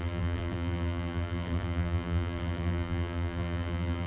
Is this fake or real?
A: fake